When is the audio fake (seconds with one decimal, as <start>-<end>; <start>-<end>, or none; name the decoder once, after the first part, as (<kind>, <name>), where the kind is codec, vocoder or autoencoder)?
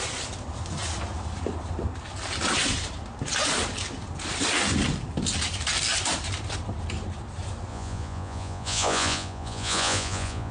7.7-10.5 (vocoder, Vocos)